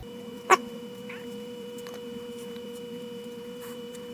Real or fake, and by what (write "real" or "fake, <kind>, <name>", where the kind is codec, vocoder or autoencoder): fake, vocoder, BigVGAN v2